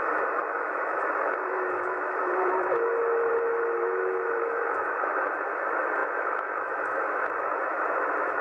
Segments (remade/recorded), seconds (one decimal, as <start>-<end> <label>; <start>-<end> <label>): 0.0-8.4 remade